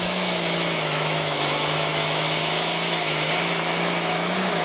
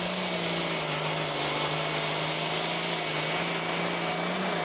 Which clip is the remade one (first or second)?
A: first